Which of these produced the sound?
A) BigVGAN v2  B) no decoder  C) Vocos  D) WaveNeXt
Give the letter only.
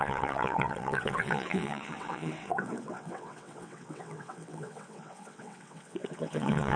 D